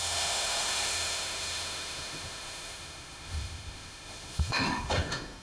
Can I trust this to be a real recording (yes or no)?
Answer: no